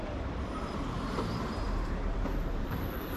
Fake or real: fake